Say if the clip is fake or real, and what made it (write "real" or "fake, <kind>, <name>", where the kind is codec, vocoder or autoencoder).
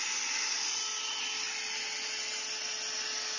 real